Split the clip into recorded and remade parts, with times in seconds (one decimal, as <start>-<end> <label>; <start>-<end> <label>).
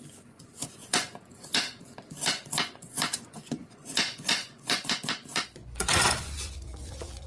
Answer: 0.0-7.3 remade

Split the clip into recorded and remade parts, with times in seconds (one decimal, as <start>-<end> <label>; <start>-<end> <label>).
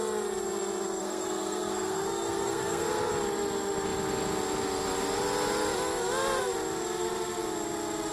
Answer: 0.0-1.0 recorded; 1.0-3.1 remade; 3.1-8.1 recorded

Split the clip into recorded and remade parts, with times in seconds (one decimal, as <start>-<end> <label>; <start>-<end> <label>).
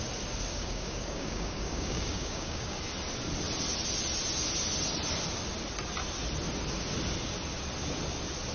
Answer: 0.0-0.5 recorded; 0.5-2.8 remade; 2.8-8.5 recorded